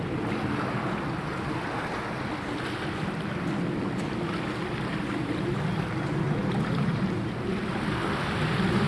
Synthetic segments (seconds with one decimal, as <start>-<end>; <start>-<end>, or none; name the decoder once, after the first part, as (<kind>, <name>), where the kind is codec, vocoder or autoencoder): none